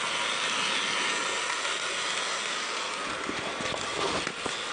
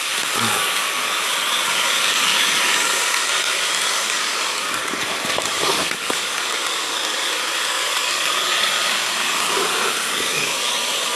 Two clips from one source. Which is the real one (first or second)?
first